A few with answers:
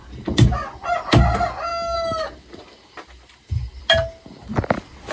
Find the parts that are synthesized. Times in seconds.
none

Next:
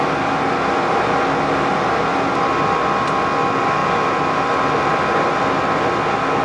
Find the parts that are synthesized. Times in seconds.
none

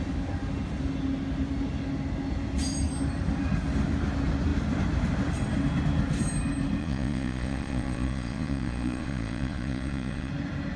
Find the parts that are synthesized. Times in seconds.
6.8-10.3 (vocoder, Vocos)

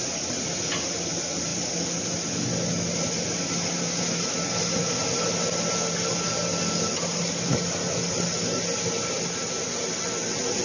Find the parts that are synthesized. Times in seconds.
none

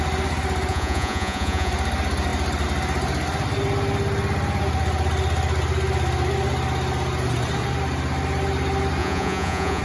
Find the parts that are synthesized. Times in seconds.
0.7-1.7 (vocoder, Vocos); 9.0-9.8